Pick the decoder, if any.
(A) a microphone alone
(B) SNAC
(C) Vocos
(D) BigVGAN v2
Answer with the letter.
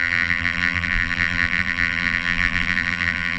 D